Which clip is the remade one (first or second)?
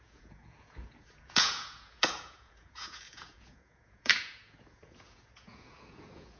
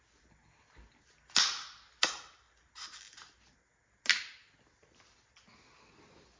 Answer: first